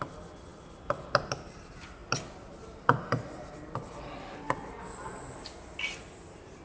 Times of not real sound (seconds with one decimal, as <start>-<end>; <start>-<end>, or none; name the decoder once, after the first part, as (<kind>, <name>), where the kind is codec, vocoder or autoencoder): none